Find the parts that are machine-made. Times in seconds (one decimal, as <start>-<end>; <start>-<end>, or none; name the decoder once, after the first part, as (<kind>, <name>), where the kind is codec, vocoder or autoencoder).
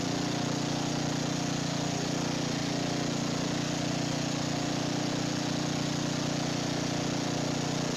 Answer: none